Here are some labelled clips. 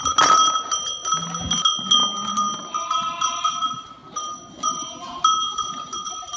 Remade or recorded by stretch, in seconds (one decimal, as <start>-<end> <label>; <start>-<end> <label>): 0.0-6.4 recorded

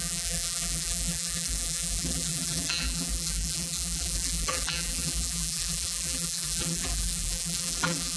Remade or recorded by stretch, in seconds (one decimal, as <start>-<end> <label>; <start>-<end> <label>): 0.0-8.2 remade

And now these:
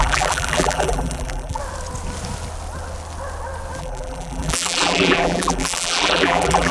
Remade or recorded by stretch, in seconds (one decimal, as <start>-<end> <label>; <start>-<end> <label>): 0.0-1.6 remade; 1.6-3.8 recorded; 3.8-6.7 remade

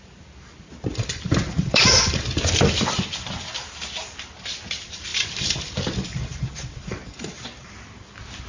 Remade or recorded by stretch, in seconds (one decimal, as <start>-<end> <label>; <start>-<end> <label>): 0.0-0.9 recorded; 0.9-2.4 remade; 2.4-5.1 recorded; 5.1-7.4 remade; 7.4-8.5 recorded